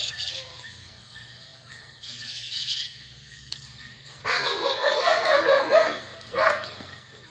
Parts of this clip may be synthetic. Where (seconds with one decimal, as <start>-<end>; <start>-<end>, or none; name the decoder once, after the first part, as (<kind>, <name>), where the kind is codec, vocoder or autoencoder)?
0.0-7.3 (codec, SNAC)